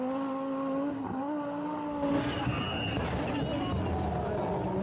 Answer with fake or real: real